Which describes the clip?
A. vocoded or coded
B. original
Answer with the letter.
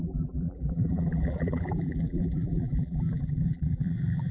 A